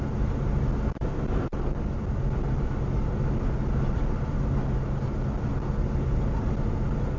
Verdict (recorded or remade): recorded